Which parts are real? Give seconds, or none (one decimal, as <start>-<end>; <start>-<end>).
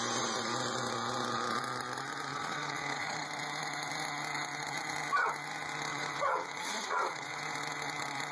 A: 0.0-2.3; 3.3-5.9; 7.4-8.3